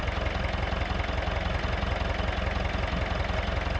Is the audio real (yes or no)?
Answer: yes